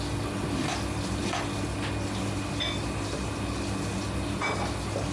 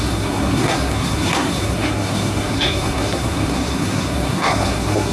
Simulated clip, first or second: second